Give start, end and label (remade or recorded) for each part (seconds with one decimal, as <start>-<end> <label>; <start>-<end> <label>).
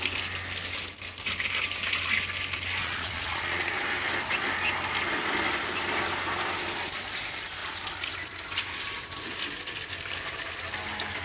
0.0-2.8 recorded; 2.8-3.7 remade; 3.7-11.2 recorded